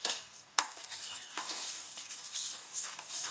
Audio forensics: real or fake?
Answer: fake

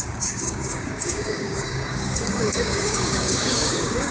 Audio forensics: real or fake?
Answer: fake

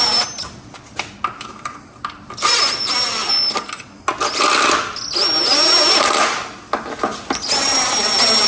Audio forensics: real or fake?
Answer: real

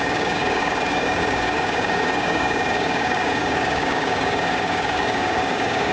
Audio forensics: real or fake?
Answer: fake